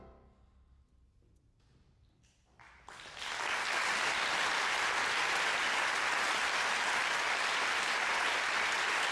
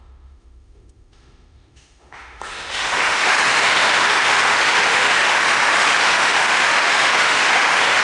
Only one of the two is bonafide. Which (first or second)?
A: first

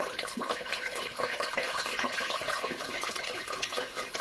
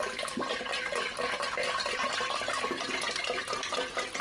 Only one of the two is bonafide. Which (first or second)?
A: second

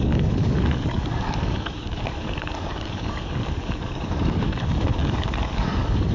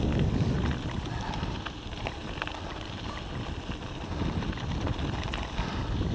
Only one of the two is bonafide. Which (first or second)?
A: second